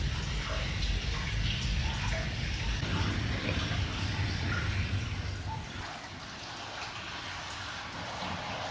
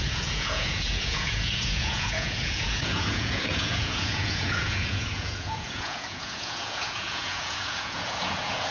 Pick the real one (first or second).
first